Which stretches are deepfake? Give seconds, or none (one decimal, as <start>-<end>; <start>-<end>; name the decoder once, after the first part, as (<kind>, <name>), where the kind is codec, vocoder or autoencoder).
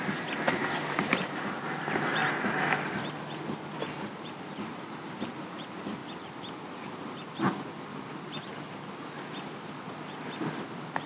0.0-2.2 (vocoder, BigVGAN v2); 4.2-6.0